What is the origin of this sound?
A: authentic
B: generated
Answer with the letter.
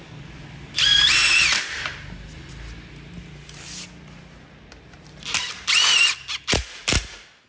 A